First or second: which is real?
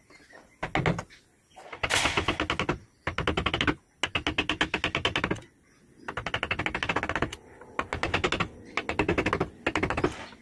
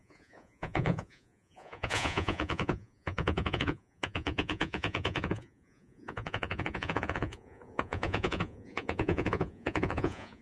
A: first